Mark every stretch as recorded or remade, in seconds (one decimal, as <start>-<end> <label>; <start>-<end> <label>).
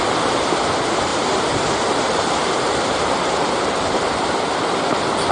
0.0-1.1 recorded; 1.1-4.3 remade; 4.3-5.3 recorded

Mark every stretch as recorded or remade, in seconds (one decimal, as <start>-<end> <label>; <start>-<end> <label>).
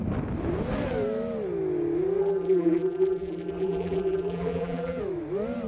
0.0-2.2 recorded; 2.2-5.0 remade; 5.0-5.7 recorded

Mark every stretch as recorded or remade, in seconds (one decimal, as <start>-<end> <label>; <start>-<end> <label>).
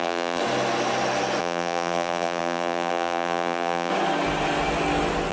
0.0-0.4 remade; 0.4-1.4 recorded; 1.4-3.9 remade; 3.9-5.3 recorded